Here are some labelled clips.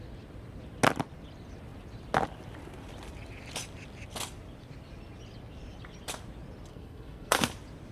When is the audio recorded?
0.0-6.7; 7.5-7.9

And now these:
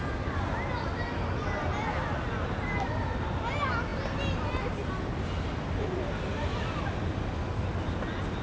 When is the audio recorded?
0.0-8.4